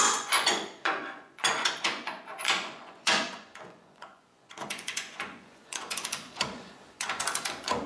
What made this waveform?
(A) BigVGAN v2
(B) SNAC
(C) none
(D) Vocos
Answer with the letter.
D